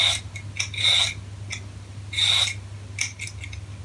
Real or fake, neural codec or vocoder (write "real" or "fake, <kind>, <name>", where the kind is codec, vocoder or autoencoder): real